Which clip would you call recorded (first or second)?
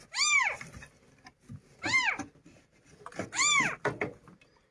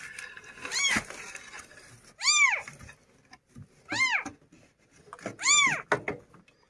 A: second